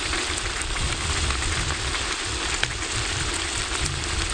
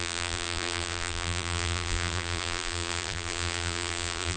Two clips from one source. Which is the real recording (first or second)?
first